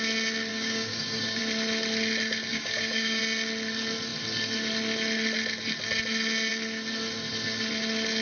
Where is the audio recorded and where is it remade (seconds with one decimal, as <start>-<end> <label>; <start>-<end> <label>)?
0.0-0.5 recorded; 0.5-1.4 remade; 1.4-2.5 recorded; 2.5-3.2 remade; 3.2-8.2 recorded